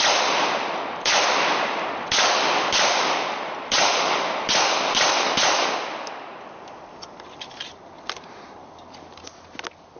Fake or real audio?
real